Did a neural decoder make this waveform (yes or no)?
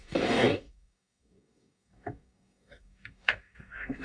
yes